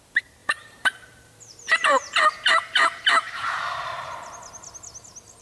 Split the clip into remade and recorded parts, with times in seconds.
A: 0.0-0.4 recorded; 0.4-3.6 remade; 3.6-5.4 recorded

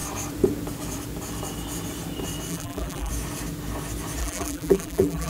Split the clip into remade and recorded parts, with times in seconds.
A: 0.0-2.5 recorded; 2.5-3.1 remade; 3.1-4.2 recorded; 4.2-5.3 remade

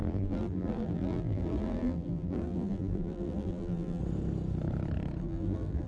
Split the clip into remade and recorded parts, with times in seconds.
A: 0.0-4.0 remade; 4.0-5.2 recorded; 5.2-5.9 remade

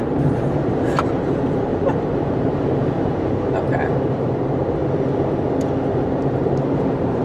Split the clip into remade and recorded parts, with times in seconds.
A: 0.0-4.8 remade; 4.8-5.9 recorded; 5.9-7.2 remade

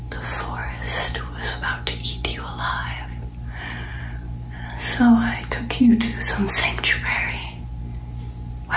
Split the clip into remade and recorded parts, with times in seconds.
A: 0.0-0.6 recorded; 0.6-1.2 remade; 1.2-8.8 recorded